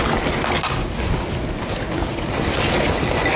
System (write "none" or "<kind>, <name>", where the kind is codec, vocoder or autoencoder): none